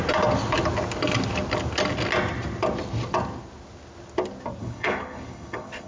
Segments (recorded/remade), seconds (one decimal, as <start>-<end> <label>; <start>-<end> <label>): 0.0-4.6 recorded; 4.6-5.9 remade